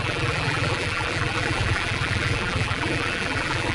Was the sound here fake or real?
fake